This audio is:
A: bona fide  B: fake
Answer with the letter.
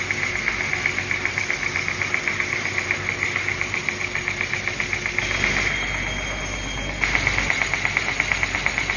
A